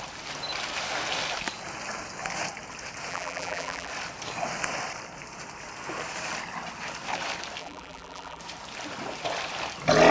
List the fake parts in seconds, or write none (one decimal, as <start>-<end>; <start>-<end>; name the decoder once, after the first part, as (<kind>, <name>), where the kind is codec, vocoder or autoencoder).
3.1-3.9 (vocoder, BigVGAN v2); 7.6-8.4